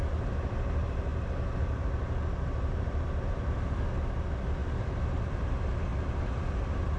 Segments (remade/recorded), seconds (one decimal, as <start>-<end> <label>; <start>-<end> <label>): 0.0-7.0 recorded